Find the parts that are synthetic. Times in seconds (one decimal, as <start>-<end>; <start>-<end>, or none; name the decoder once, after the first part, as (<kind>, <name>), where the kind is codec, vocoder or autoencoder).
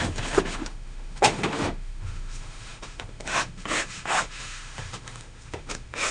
0.0-6.1 (autoencoder, DAC-VAE)